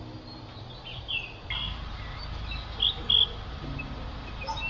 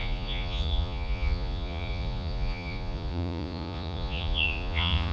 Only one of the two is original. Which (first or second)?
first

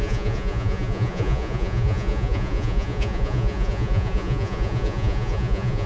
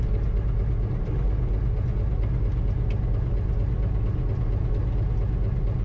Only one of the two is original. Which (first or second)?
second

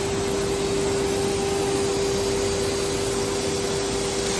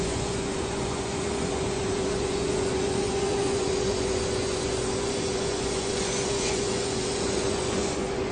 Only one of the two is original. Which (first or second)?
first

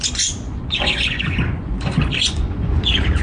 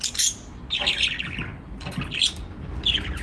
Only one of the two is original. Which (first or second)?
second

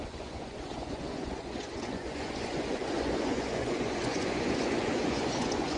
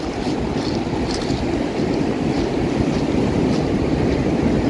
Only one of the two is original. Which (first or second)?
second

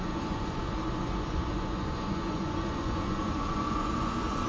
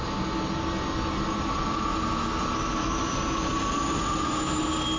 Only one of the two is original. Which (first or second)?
second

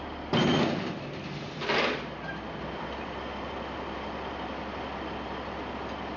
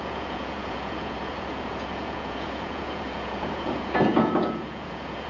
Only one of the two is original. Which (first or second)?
first